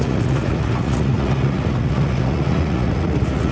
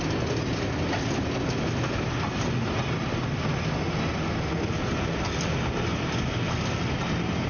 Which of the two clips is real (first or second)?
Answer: second